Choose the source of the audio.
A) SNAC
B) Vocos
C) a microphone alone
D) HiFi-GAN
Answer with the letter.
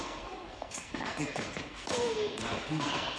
A